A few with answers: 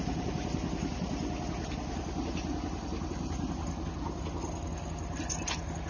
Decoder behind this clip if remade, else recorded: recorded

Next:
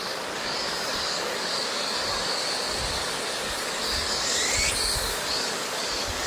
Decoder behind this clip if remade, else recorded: remade, codec, DAC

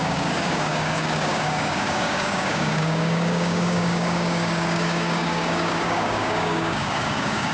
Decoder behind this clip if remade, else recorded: remade, codec, DAC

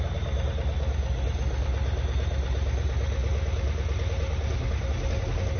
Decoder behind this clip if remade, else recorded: recorded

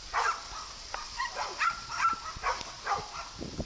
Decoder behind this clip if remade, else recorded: recorded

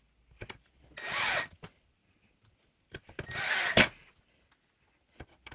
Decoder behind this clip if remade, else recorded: recorded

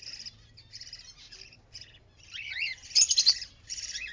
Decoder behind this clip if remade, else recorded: recorded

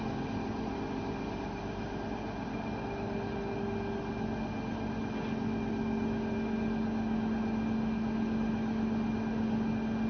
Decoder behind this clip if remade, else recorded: recorded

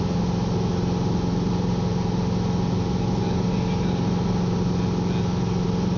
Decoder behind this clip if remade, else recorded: recorded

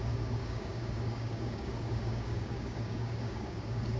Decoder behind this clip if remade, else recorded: remade, codec, DAC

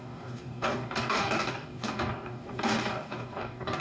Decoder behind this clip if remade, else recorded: remade, codec, DAC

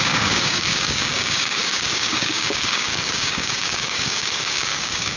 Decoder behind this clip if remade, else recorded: remade, codec, DAC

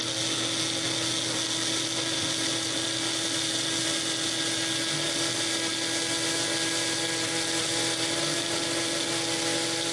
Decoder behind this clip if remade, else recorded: recorded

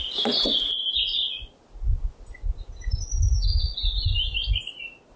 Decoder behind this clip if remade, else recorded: recorded